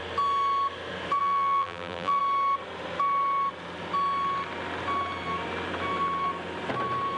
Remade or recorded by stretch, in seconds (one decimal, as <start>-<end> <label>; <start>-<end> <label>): 0.0-1.2 recorded; 1.2-2.2 remade; 2.2-7.2 recorded